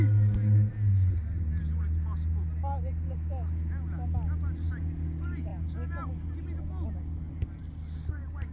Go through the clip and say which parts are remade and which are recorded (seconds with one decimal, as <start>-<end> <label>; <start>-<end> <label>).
0.0-8.5 recorded